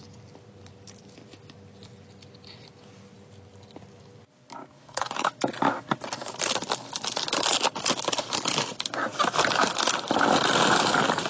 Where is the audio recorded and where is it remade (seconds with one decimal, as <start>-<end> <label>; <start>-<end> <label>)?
0.0-4.6 recorded; 4.6-5.4 remade; 5.4-11.3 recorded